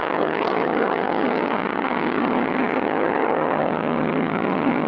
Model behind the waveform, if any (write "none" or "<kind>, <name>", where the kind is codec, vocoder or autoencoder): vocoder, HiFi-GAN